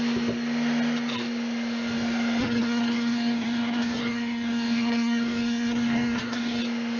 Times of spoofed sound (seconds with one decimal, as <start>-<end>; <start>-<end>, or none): 2.4-6.6